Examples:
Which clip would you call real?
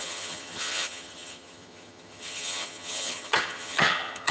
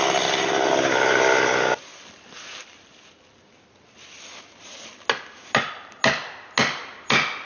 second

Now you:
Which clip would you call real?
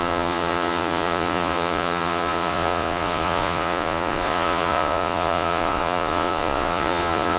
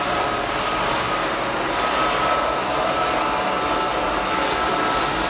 second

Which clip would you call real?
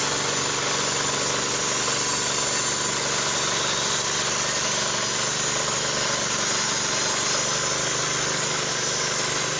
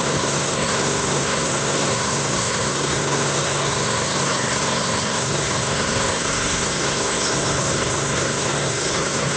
first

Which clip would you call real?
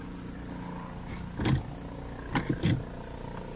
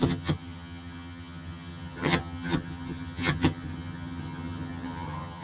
first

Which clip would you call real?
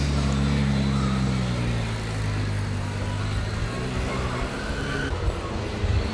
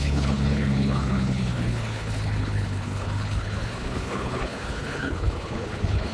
first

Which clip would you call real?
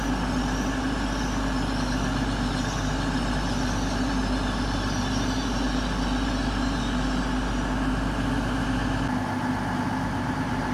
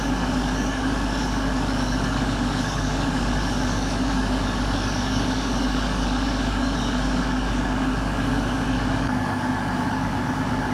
first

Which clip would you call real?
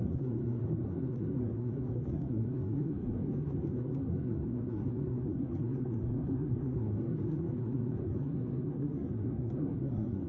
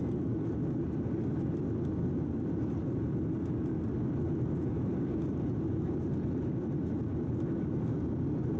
second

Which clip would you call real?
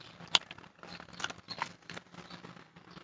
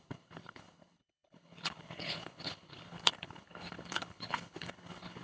first